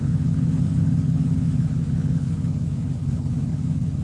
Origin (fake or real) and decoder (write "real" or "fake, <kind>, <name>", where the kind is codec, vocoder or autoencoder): fake, codec, HILCodec